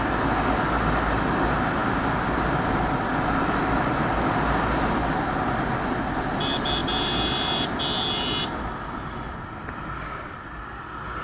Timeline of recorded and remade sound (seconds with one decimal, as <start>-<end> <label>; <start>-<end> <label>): 0.0-6.8 recorded; 6.8-7.8 remade; 7.8-8.4 recorded; 8.4-10.6 remade; 10.6-11.2 recorded